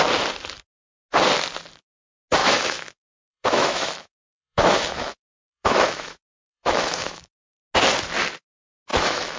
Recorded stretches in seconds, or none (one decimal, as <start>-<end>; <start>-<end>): 0.0-2.4; 7.6-8.9